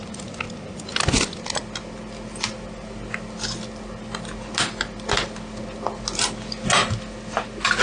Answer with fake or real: real